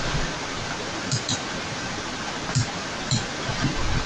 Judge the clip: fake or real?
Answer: real